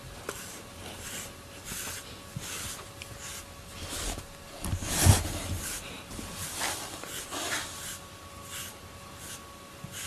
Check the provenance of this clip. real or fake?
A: fake